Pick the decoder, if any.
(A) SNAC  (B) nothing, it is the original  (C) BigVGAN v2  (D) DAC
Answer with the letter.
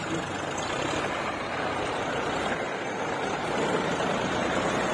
C